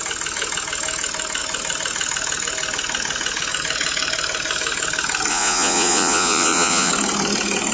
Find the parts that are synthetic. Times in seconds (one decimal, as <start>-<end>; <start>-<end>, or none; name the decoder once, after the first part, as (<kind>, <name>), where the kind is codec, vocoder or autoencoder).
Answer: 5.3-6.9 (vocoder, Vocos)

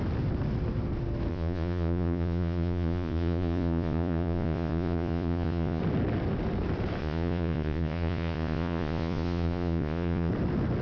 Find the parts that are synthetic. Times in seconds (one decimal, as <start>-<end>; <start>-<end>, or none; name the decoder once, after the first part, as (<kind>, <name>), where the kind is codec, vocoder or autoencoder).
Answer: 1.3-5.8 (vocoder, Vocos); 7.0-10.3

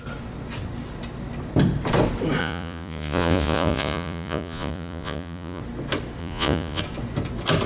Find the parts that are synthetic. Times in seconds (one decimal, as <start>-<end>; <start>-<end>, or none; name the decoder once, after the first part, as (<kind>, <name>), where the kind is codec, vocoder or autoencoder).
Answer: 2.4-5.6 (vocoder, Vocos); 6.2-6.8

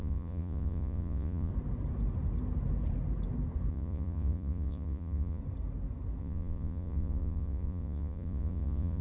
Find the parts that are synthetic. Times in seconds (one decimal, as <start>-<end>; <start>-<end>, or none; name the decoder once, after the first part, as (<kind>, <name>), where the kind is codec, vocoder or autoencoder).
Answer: 0.0-1.5 (vocoder, Vocos); 3.7-5.4; 6.2-9.0

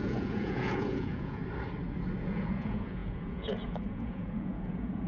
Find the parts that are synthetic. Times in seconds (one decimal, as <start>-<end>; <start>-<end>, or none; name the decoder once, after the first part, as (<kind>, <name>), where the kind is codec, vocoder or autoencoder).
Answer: 0.0-1.4 (vocoder, Vocos); 2.2-5.1